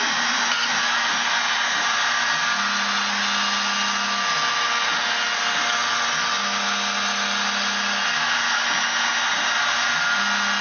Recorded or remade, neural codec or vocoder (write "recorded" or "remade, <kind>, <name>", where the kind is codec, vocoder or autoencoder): recorded